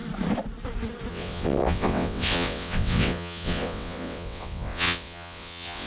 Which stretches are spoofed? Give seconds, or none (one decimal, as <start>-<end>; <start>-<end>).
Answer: 1.1-5.9